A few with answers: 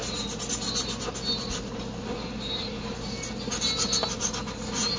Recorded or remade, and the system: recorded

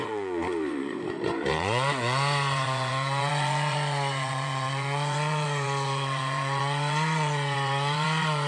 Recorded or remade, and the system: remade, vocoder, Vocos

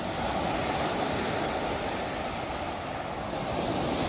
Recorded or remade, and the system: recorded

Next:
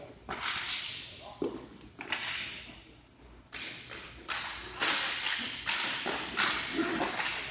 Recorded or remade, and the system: recorded